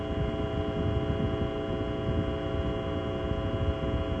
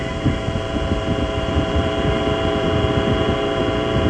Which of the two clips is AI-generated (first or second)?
second